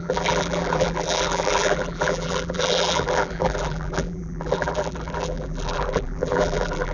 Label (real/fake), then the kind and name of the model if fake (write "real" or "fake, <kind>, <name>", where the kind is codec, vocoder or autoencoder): fake, vocoder, BigVGAN v2